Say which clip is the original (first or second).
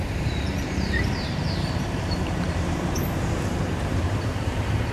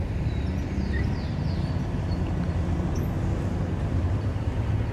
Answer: second